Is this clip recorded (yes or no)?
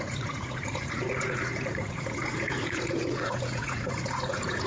no